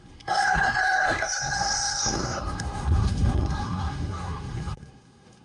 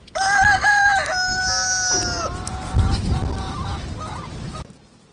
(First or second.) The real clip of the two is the second